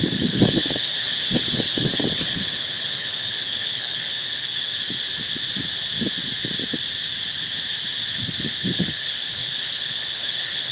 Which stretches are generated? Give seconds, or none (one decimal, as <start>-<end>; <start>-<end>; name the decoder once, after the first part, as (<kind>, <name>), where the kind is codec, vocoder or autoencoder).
0.0-4.7 (codec, HILCodec); 8.4-10.7